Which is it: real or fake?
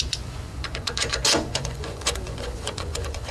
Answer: fake